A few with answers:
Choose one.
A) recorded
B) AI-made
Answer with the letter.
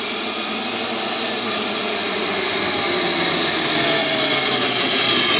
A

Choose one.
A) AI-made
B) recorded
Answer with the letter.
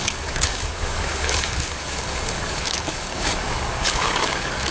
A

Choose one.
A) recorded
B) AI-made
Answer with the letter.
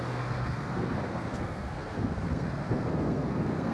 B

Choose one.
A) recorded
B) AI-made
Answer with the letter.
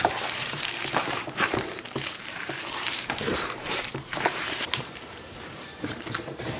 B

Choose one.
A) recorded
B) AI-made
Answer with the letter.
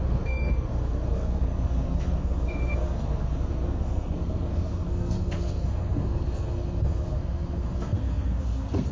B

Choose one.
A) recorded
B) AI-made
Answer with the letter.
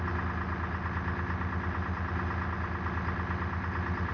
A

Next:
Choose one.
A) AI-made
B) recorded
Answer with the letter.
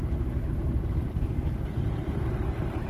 A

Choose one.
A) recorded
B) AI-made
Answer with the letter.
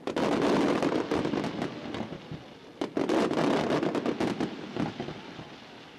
A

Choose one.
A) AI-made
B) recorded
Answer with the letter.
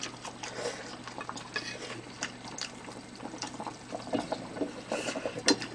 B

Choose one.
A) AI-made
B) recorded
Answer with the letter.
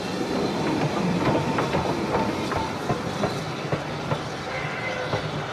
B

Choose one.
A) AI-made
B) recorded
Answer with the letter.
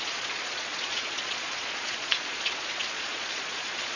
A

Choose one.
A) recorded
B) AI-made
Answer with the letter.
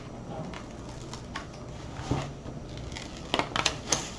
A